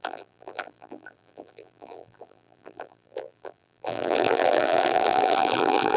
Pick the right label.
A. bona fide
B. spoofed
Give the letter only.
B